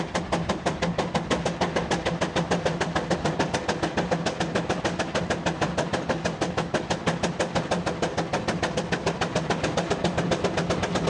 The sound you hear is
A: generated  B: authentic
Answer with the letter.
B